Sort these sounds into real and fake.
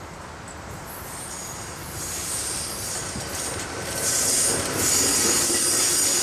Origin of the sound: real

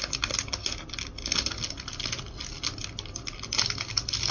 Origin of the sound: real